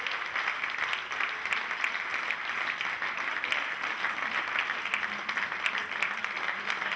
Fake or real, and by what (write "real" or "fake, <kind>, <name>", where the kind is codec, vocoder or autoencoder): real